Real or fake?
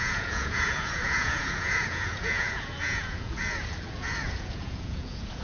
fake